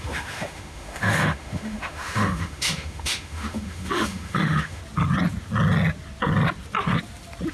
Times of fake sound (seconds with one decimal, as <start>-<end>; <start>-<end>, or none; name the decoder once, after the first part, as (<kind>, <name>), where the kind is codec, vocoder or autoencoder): 0.0-4.8 (autoencoder, DAC-VAE)